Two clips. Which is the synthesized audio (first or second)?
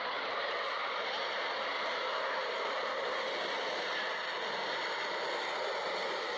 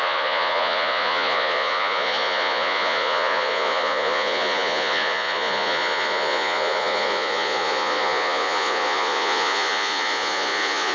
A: second